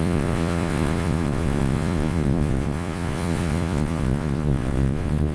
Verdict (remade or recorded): remade